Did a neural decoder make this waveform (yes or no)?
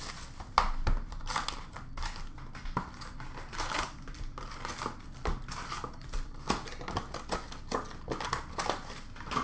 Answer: no